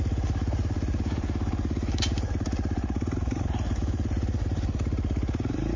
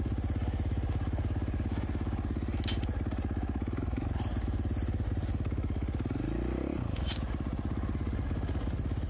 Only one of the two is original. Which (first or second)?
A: second